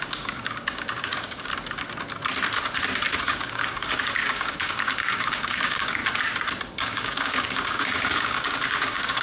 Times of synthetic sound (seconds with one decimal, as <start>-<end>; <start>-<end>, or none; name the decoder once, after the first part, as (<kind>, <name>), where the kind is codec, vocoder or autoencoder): 0.0-1.5 (codec, DAC); 3.2-6.0; 6.7-9.2